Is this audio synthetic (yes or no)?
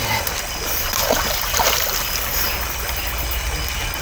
no